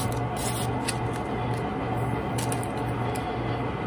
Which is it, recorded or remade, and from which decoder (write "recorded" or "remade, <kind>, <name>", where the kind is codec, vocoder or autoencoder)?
recorded